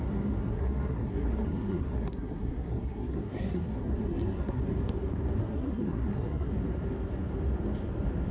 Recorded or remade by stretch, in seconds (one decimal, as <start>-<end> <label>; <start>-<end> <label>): 0.0-0.4 recorded; 0.4-4.6 remade; 4.6-5.4 recorded; 5.4-6.5 remade; 6.5-8.3 recorded